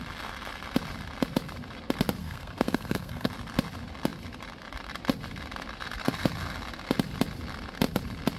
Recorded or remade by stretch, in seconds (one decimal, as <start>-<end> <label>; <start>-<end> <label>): 0.0-2.2 recorded; 2.2-3.3 remade; 3.3-8.4 recorded